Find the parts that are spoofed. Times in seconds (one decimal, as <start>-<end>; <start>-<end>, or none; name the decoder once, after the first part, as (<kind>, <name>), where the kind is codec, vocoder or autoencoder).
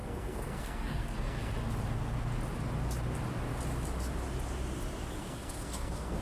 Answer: 0.0-1.5 (codec, SNAC); 5.2-6.2